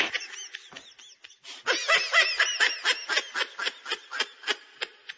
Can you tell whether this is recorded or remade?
recorded